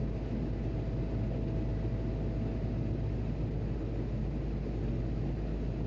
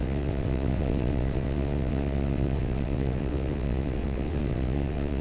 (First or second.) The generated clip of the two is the second